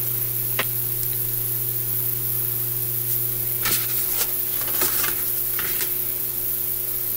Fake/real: real